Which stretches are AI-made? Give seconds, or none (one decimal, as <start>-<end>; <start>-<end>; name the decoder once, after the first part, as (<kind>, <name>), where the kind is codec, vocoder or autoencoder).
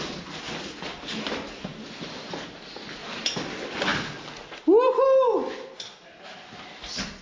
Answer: none